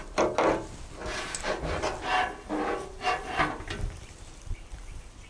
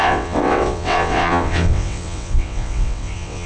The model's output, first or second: second